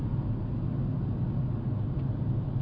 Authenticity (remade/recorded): recorded